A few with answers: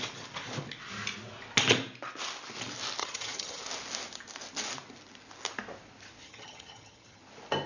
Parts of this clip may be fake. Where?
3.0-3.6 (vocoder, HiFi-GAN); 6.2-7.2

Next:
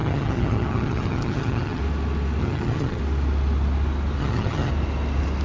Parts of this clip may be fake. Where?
0.0-1.8 (vocoder, HiFi-GAN); 2.4-3.0; 4.2-4.7

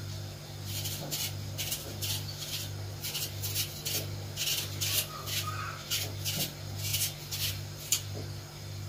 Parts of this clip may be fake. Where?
0.0-6.9 (vocoder, BigVGAN v2); 7.5-8.9

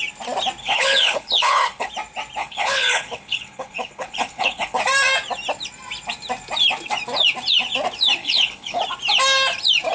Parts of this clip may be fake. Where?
0.6-1.9 (codec, HILCodec); 2.4-4.8; 8.2-8.8

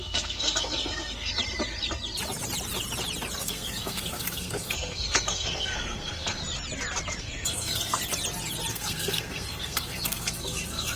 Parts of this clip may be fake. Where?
0.0-1.3 (codec, SNAC); 3.4-6.4; 7.2-8.0; 8.7-11.0

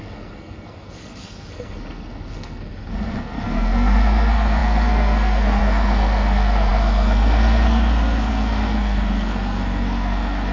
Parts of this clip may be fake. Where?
0.0-10.5 (codec, SNAC)

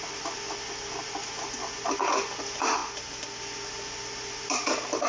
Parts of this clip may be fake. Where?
none